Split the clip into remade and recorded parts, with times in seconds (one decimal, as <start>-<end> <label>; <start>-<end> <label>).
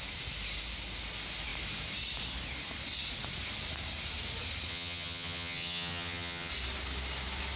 0.0-4.7 recorded; 4.7-6.5 remade; 6.5-7.6 recorded